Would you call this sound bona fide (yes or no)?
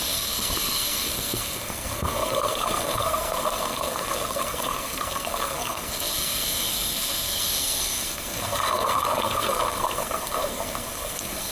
no